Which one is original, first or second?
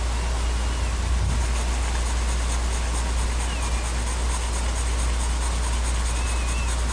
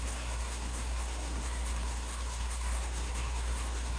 first